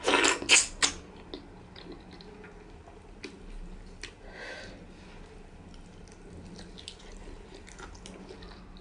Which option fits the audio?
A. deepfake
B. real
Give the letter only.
B